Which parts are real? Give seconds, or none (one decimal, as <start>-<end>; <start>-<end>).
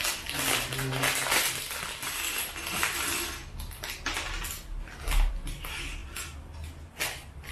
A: 0.0-7.5